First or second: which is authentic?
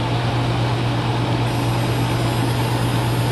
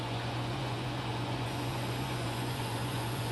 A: first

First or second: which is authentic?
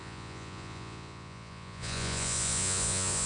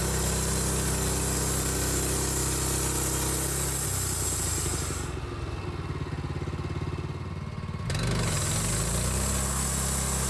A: second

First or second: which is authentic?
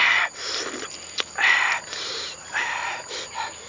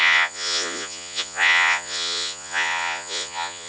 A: first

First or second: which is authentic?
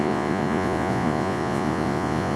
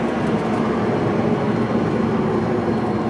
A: second